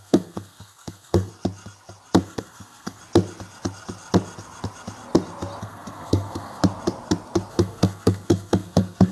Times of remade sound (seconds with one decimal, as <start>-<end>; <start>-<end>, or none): 0.0-1.3; 2.2-3.0; 5.6-6.6; 7.5-9.1